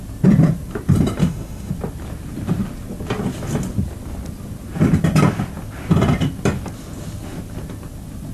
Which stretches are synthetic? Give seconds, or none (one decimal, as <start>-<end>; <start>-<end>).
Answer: 1.2-1.7